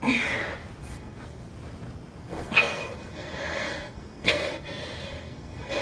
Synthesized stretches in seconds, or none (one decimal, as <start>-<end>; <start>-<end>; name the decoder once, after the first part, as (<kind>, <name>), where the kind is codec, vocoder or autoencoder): 0.8-1.5 (codec, SNAC); 2.2-5.8